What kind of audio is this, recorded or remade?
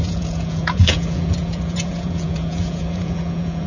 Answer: remade